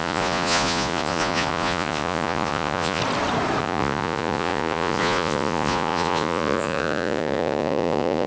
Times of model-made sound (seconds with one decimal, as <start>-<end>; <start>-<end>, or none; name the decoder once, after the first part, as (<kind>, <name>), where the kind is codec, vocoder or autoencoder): 0.0-3.0 (vocoder, Vocos); 3.6-8.3